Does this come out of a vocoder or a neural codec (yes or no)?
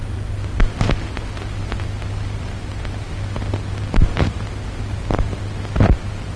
yes